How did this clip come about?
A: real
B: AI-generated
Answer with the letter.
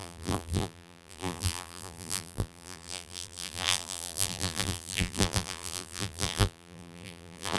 B